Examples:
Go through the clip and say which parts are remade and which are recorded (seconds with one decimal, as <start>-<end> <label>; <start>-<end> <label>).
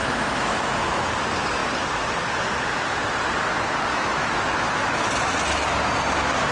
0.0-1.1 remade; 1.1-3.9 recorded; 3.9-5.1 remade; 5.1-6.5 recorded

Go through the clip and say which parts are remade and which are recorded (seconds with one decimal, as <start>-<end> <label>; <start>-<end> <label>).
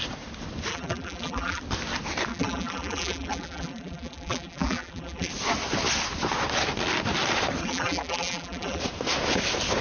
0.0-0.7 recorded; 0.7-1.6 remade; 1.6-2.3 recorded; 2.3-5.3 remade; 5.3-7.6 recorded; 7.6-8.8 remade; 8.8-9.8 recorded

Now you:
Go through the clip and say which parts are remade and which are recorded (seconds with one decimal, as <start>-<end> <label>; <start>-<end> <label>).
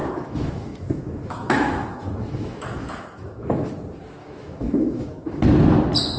0.0-3.7 remade; 3.7-4.2 recorded; 4.2-5.4 remade; 5.4-6.2 recorded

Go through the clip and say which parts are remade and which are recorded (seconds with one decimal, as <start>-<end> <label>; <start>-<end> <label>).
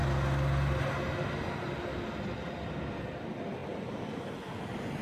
0.0-5.0 recorded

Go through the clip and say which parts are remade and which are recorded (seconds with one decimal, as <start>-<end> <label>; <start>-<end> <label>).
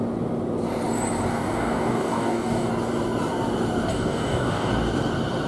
0.0-1.3 recorded; 1.3-2.7 remade; 2.7-3.9 recorded; 3.9-4.7 remade; 4.7-5.5 recorded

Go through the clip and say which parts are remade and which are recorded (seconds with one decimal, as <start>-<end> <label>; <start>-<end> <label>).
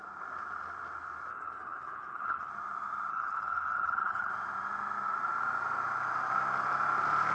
0.0-1.3 recorded; 1.3-2.5 remade; 2.5-3.1 recorded; 3.1-4.3 remade; 4.3-7.3 recorded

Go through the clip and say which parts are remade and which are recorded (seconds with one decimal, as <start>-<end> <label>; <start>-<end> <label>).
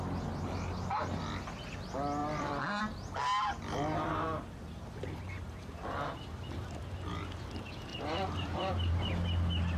0.0-2.2 recorded; 2.2-2.8 remade; 2.8-7.9 recorded; 7.9-8.7 remade; 8.7-9.8 recorded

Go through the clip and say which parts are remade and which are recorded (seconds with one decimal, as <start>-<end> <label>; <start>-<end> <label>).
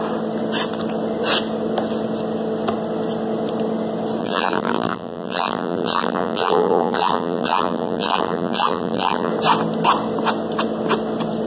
0.0-4.2 recorded; 4.2-9.3 remade; 9.3-11.5 recorded